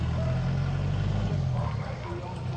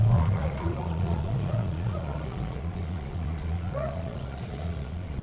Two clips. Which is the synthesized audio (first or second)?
second